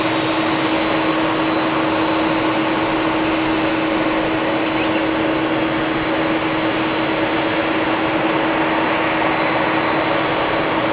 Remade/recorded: recorded